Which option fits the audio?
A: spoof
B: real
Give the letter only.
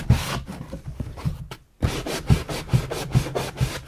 B